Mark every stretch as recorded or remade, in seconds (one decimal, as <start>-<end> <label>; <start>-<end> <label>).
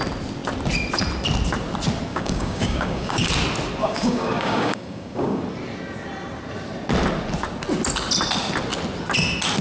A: 0.0-2.1 recorded; 2.1-3.3 remade; 3.3-3.8 recorded; 3.8-5.4 remade; 5.4-9.6 recorded